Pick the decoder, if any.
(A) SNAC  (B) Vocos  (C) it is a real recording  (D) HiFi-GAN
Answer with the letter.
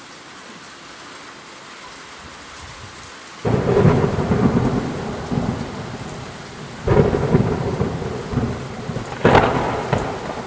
C